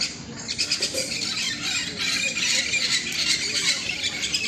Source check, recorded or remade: recorded